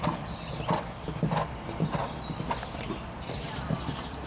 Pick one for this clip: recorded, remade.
remade